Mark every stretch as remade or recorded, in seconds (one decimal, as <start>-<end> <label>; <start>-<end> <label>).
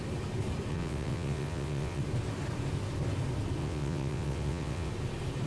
0.0-0.7 recorded; 0.7-2.0 remade; 2.0-3.6 recorded; 3.6-4.9 remade; 4.9-5.5 recorded